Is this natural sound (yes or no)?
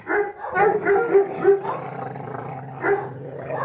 yes